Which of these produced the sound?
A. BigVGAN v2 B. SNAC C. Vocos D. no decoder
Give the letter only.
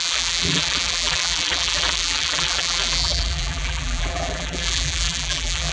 A